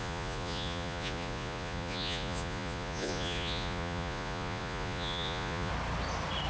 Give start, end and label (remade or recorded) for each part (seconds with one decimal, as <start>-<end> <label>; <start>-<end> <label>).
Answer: 0.0-5.7 remade; 5.7-6.5 recorded